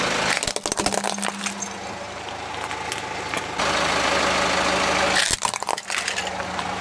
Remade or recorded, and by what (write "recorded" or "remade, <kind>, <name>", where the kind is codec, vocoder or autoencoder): recorded